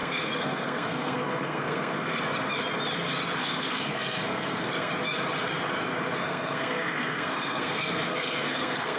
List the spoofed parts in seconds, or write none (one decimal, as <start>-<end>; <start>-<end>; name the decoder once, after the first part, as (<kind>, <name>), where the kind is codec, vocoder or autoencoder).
0.0-2.2 (codec, SNAC); 3.4-4.9; 6.2-9.0